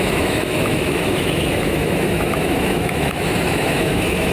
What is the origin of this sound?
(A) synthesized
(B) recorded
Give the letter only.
A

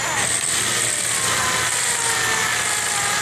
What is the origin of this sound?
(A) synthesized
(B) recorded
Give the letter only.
B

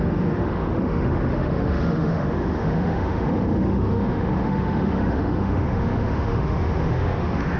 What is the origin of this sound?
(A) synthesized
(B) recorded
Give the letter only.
A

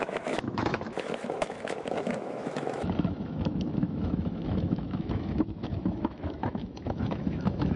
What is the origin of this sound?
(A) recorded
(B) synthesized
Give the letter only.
B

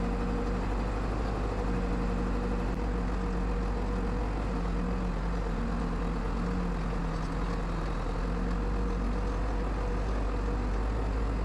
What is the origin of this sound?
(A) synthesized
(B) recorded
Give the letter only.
B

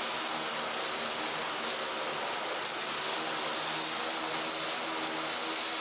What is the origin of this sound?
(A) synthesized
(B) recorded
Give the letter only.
B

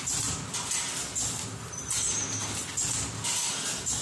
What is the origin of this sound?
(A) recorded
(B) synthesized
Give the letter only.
A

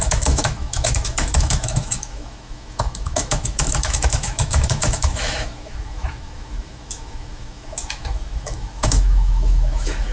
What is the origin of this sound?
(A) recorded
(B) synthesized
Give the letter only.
B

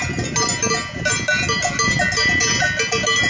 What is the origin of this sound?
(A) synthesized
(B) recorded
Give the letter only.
B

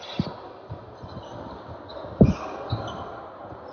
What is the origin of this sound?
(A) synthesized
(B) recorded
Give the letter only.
B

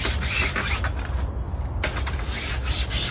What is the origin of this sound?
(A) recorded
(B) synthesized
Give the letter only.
A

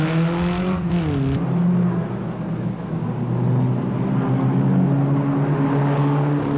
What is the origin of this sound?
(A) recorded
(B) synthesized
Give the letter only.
A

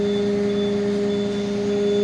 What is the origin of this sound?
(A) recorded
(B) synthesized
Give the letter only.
A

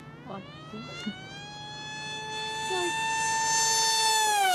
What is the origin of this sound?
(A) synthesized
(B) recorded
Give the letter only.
B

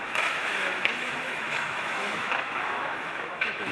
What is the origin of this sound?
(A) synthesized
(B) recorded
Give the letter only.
A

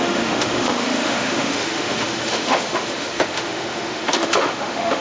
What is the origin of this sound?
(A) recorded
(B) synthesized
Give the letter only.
B